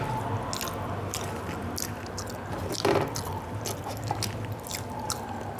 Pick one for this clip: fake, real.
real